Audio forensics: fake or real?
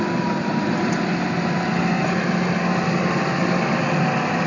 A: real